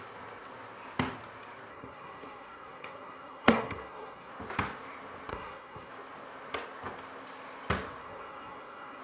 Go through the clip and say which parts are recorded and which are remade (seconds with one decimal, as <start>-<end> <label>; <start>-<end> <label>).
0.0-1.7 recorded; 1.7-4.3 remade; 4.3-5.3 recorded; 5.3-5.9 remade; 5.9-8.0 recorded; 8.0-9.0 remade

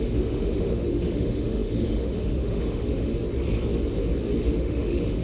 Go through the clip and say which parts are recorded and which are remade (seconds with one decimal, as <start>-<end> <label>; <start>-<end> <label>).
0.0-3.1 remade; 3.1-4.4 recorded; 4.4-5.2 remade